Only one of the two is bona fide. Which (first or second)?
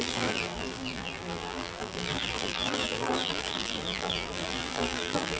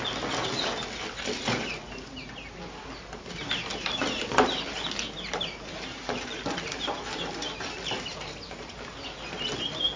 second